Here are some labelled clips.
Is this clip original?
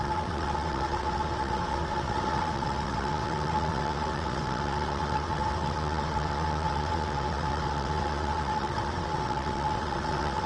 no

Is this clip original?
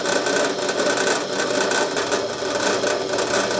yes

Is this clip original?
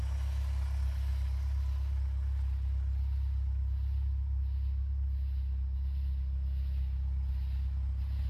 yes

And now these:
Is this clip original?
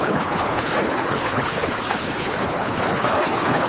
no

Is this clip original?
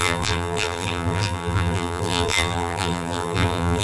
no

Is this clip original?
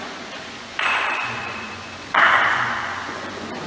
no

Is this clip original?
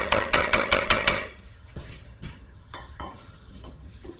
no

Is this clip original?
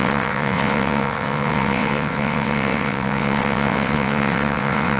no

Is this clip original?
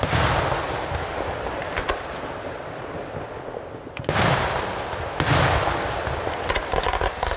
yes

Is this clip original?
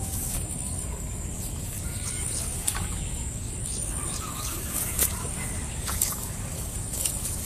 no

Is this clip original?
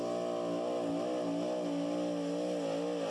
yes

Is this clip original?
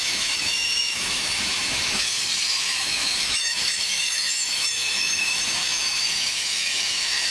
no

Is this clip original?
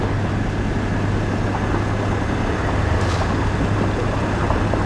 yes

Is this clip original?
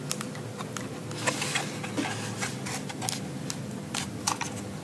yes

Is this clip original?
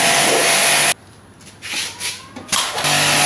yes